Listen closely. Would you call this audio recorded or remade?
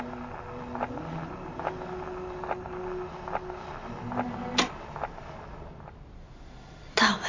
recorded